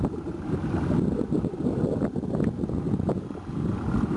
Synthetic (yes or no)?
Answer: no